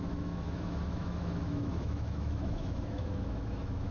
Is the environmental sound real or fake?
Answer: fake